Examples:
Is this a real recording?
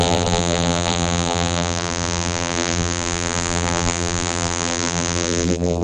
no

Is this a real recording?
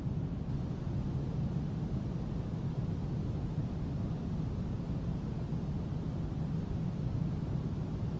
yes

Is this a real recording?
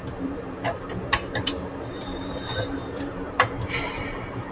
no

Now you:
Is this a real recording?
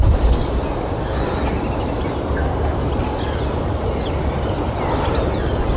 yes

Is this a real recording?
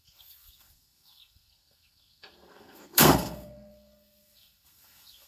no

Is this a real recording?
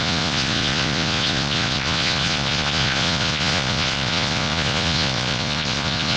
no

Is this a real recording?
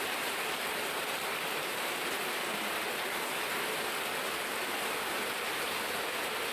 yes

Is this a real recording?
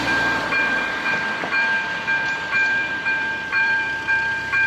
no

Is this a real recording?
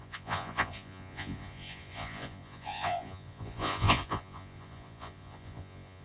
no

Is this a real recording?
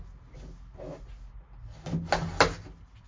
yes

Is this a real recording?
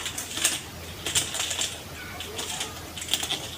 yes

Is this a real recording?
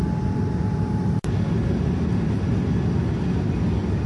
yes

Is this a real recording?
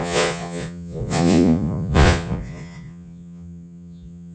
no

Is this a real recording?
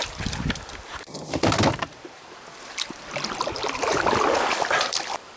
no